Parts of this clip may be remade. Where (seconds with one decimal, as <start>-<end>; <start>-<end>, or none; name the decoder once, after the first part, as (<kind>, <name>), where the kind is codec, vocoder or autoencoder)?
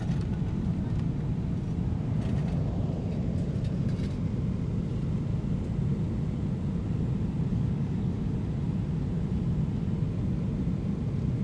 7.5-8.3 (codec, DAC)